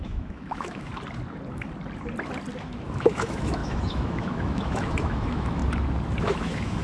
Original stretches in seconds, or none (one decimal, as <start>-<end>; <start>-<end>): 0.9-2.6; 5.6-6.2